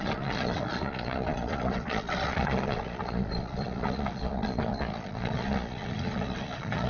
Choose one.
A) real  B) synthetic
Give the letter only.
B